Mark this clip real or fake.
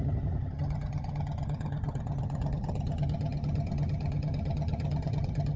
fake